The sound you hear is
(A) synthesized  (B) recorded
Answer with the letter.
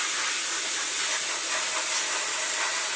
B